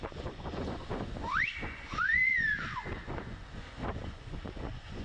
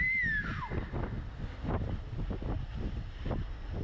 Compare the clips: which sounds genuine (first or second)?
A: second